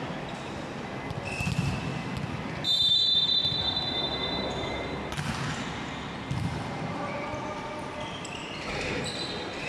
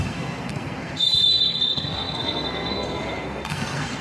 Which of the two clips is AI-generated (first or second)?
second